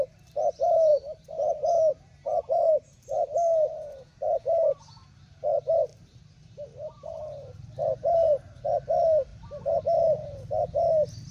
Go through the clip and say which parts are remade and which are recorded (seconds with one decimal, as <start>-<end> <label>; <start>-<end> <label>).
0.0-0.9 recorded; 0.9-2.7 remade; 2.7-5.9 recorded; 5.9-7.2 remade; 7.2-7.8 recorded; 7.8-8.6 remade; 8.6-9.3 recorded; 9.3-9.8 remade; 9.8-11.3 recorded